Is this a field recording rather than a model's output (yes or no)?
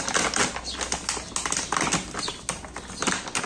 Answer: yes